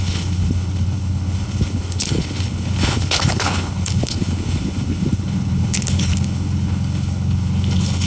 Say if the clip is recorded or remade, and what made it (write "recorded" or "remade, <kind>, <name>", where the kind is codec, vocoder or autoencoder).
remade, codec, HILCodec